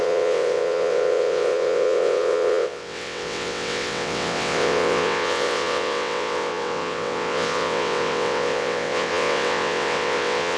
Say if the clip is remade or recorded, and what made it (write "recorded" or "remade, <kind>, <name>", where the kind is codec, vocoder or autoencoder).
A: remade, vocoder, WaveNeXt